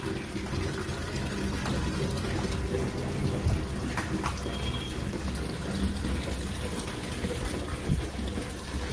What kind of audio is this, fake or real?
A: real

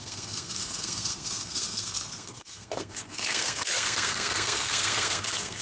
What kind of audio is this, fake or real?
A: fake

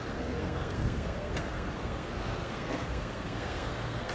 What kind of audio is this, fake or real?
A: fake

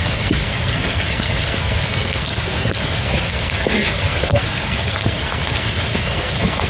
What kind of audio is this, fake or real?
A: fake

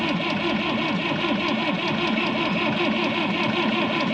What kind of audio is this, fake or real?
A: real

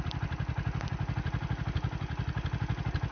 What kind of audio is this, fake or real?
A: real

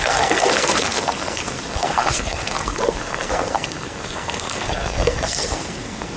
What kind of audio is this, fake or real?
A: fake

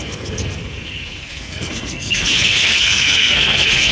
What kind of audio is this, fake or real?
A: fake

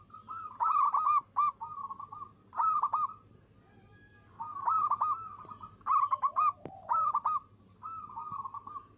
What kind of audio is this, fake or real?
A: real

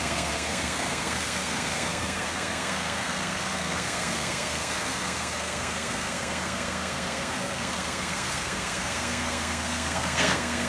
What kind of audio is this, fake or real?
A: fake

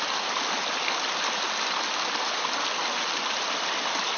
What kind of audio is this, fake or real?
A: real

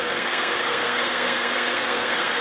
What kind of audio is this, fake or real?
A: fake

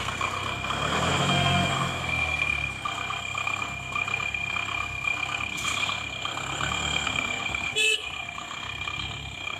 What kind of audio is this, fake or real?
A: fake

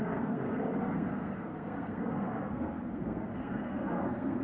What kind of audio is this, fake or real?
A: fake